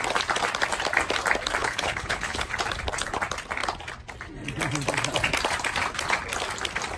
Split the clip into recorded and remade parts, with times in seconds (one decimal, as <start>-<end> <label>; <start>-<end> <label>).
0.0-1.6 recorded; 1.6-2.5 remade; 2.5-7.0 recorded